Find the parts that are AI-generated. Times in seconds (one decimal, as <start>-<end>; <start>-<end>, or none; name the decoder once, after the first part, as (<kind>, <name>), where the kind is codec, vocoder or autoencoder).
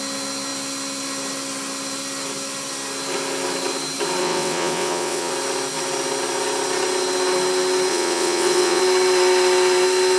4.2-5.3 (vocoder, WaveNeXt); 7.9-8.8